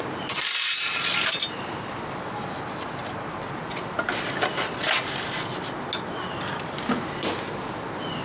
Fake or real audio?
real